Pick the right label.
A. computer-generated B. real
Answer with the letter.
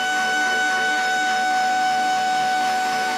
A